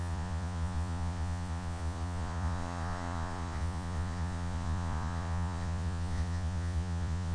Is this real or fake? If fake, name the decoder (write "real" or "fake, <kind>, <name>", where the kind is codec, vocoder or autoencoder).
fake, vocoder, Vocos